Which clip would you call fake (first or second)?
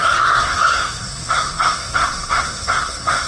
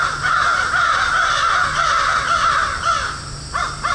first